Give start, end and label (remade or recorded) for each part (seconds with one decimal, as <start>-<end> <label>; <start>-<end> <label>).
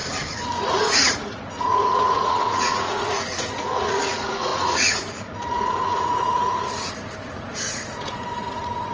0.0-8.9 remade